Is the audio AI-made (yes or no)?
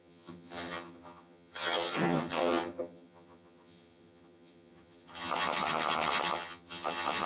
yes